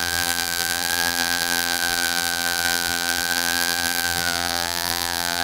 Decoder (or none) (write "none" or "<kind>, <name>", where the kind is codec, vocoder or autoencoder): vocoder, BigVGAN v2